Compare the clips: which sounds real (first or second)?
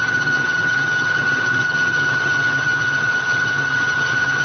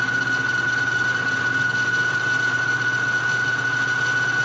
second